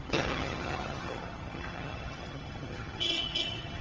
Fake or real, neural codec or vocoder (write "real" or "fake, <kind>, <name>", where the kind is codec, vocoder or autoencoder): fake, vocoder, HiFi-GAN